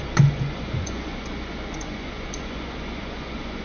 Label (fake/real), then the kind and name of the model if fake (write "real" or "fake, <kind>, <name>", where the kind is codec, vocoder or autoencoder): fake, vocoder, Vocos